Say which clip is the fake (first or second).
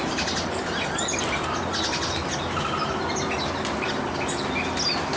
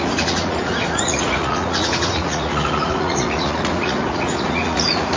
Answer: second